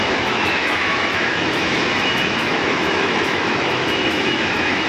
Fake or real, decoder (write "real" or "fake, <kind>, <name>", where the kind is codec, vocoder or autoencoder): fake, autoencoder, DAC-VAE